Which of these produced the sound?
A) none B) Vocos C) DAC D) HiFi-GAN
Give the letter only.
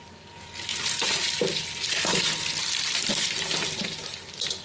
A